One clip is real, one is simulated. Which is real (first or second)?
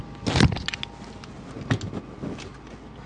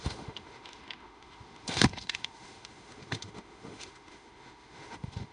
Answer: first